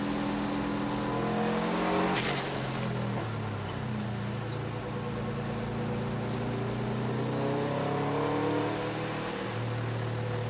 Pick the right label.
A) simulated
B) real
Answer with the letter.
B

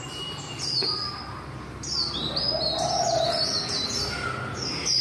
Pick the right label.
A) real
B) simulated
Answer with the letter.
A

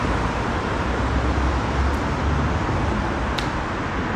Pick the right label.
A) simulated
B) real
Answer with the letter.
B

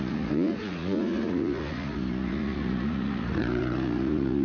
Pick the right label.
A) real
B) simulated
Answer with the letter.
B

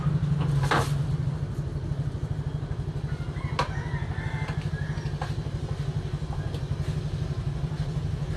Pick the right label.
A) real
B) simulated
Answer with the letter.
A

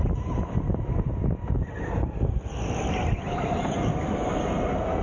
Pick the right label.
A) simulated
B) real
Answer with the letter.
B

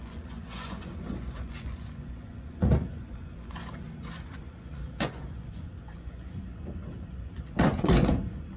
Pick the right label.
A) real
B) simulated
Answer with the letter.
B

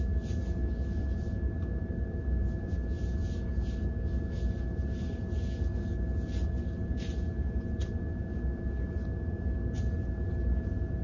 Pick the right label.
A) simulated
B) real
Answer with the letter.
B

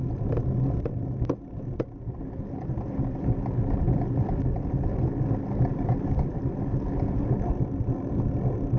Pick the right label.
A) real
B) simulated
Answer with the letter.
A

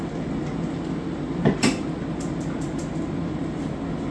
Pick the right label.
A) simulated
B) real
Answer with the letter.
B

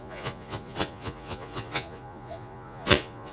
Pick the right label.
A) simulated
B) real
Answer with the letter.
A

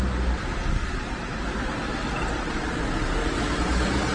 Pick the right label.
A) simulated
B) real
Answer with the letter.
B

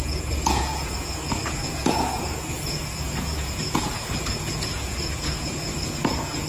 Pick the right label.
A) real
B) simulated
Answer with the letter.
B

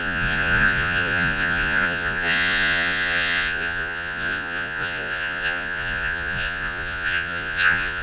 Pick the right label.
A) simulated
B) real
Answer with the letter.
A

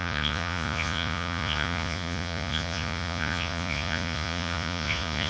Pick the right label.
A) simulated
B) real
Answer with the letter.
A